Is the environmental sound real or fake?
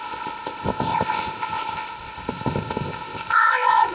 fake